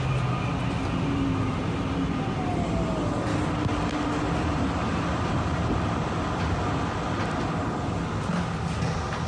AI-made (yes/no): no